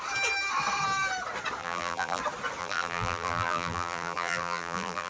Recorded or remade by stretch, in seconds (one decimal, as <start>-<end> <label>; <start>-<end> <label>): 0.0-1.6 recorded; 1.6-2.2 remade; 2.2-2.6 recorded; 2.6-5.1 remade